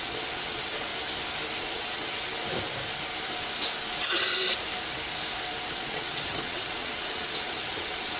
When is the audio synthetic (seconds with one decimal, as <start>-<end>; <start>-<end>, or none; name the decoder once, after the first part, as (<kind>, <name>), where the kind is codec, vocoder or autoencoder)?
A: 0.0-0.9 (vocoder, WaveNeXt); 1.6-2.3; 5.7-8.2